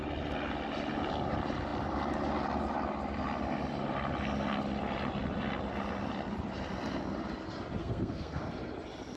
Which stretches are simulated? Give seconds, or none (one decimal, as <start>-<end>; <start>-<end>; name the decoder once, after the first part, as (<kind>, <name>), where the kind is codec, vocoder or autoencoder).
7.8-8.4 (codec, SNAC)